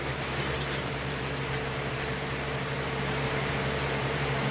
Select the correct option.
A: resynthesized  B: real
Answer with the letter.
A